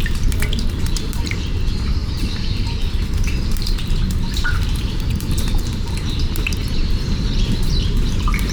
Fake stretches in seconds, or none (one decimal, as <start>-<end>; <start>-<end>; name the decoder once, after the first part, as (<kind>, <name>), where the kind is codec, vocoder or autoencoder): 0.0-8.5 (vocoder, BigVGAN v2)